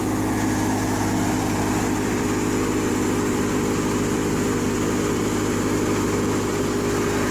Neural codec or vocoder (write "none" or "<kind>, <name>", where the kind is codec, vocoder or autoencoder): none